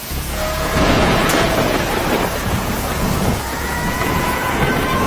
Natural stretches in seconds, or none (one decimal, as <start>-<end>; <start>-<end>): 1.8-2.4; 4.6-5.1